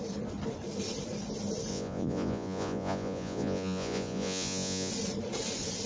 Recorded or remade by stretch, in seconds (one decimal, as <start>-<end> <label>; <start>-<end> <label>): 0.0-1.7 recorded; 1.7-4.9 remade; 4.9-5.9 recorded